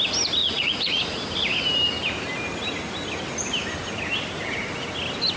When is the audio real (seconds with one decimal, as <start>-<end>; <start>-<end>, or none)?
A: 0.0-0.4; 1.0-5.4